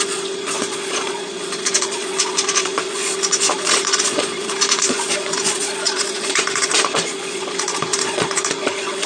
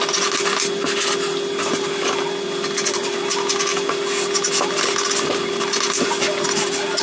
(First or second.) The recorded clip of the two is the second